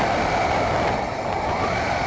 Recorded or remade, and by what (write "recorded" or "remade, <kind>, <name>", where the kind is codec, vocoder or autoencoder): recorded